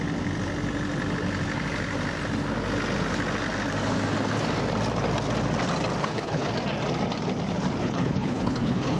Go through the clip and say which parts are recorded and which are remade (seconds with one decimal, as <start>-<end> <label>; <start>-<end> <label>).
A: 0.0-6.0 recorded; 6.0-6.5 remade; 6.5-7.8 recorded; 7.8-9.0 remade